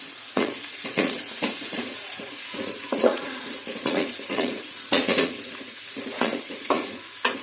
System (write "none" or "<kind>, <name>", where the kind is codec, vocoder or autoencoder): vocoder, Vocos